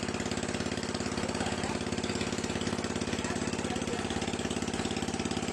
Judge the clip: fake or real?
real